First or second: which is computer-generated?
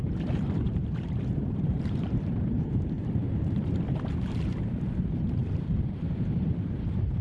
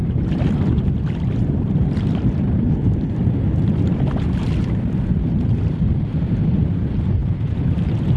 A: first